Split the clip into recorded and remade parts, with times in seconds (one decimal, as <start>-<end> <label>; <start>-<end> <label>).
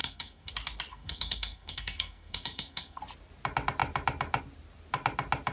0.0-0.5 remade; 0.5-0.9 recorded; 0.9-3.0 remade; 3.0-5.5 recorded